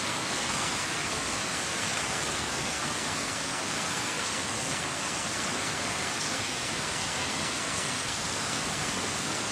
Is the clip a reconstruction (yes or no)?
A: yes